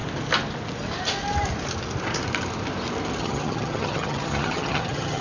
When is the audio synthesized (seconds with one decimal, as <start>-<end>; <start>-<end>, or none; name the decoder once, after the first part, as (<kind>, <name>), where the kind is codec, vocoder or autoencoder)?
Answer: 3.2-5.2 (vocoder, HiFi-GAN)